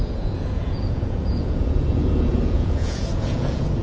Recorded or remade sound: remade